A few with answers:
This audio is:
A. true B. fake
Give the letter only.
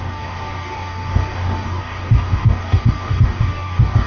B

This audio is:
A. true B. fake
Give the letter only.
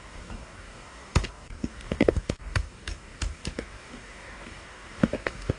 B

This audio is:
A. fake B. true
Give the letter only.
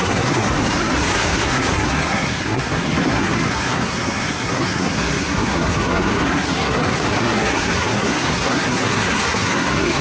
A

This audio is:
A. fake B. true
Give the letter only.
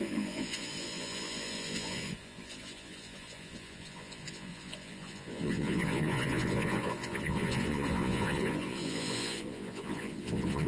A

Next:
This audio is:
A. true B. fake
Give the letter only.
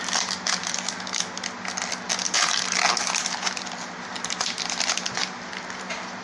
A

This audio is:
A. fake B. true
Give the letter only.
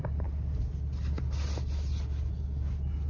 B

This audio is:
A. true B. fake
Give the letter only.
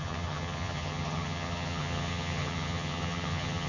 B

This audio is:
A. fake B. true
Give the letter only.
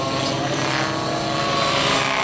B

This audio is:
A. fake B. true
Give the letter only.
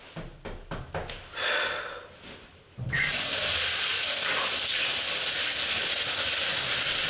B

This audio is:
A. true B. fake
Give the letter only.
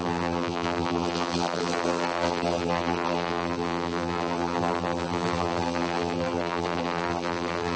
B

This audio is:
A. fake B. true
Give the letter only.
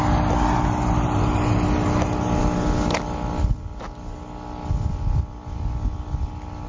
B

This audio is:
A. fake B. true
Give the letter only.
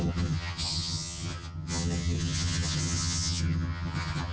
A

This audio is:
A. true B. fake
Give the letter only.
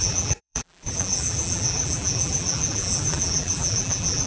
B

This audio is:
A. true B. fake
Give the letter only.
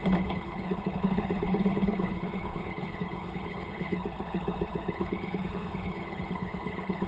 B